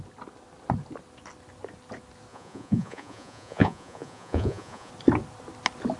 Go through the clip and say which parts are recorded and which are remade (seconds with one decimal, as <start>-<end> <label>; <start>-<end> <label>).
0.0-2.3 recorded; 2.3-4.9 remade; 4.9-6.0 recorded